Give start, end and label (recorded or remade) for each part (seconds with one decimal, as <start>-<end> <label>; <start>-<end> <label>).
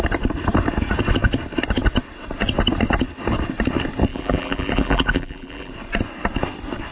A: 0.0-4.1 recorded; 4.1-5.7 remade; 5.7-6.9 recorded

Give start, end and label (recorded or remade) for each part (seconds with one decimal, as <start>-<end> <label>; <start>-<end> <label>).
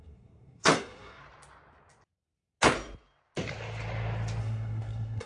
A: 0.0-1.2 remade; 1.2-4.4 recorded; 4.4-5.3 remade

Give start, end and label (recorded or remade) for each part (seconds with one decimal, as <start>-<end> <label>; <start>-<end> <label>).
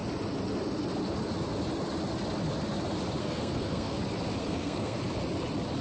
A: 0.0-3.2 recorded; 3.2-4.0 remade; 4.0-4.4 recorded; 4.4-5.0 remade; 5.0-5.8 recorded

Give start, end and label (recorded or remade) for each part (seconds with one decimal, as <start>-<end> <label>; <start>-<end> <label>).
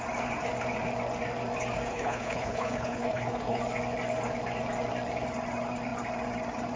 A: 0.0-1.9 recorded; 1.9-3.6 remade; 3.6-6.8 recorded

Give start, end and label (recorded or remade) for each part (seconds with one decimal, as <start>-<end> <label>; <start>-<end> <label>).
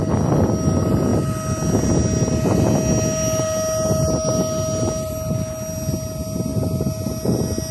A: 0.0-7.7 recorded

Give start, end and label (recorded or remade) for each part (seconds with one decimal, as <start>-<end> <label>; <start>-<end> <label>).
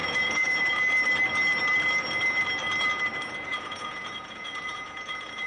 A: 0.0-0.9 remade; 0.9-3.5 recorded; 3.5-5.5 remade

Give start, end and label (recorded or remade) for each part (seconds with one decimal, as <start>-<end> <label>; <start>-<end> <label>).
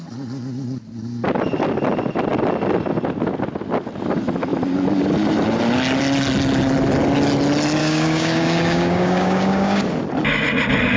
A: 0.0-7.8 recorded; 7.8-9.8 remade; 9.8-11.0 recorded